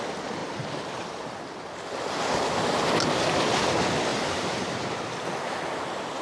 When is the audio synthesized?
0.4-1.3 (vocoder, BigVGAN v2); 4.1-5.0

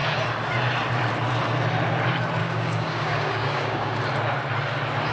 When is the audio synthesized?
2.4-4.0 (codec, DAC)

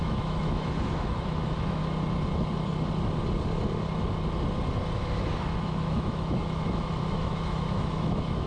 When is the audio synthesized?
0.0-1.8 (autoencoder, DAC-VAE); 5.6-8.5

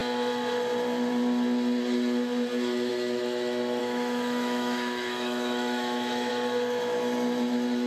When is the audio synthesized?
3.8-6.3 (autoencoder, DAC-VAE)

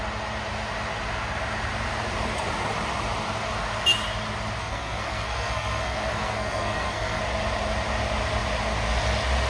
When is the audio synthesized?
4.6-7.2 (codec, SNAC)

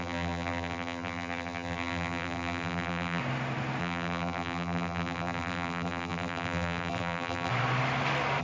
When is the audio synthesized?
0.0-3.2 (vocoder, BigVGAN v2); 3.8-7.5

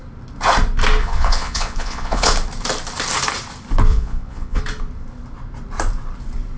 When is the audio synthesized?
1.0-2.3 (vocoder, Vocos); 3.9-4.6